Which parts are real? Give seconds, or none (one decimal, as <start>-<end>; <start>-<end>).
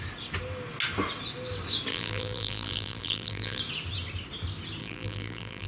0.0-1.9; 3.6-4.8